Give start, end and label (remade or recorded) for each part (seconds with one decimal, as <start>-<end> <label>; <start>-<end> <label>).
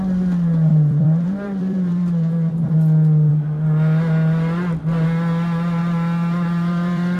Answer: 0.0-0.7 recorded; 0.7-3.3 remade; 3.3-5.8 recorded; 5.8-7.2 remade